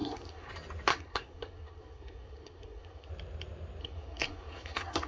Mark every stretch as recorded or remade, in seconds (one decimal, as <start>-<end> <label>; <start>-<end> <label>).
0.0-0.5 remade; 0.5-0.9 recorded; 0.9-3.1 remade; 3.1-3.8 recorded; 3.8-5.1 remade